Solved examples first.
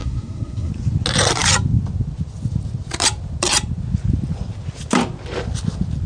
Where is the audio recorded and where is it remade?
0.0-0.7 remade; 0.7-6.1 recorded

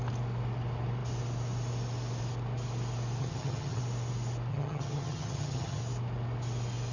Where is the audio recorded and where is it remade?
0.0-3.2 recorded; 3.2-3.8 remade; 3.8-4.5 recorded; 4.5-5.8 remade; 5.8-6.9 recorded